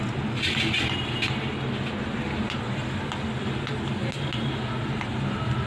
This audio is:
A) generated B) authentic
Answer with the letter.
B